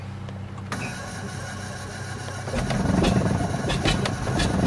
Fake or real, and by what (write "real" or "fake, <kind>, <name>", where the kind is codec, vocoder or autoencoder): real